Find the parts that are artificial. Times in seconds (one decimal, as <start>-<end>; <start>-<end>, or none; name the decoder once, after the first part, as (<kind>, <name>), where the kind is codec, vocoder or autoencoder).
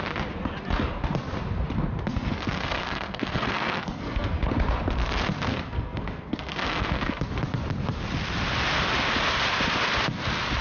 2.1-4.4 (codec, SNAC); 5.5-7.3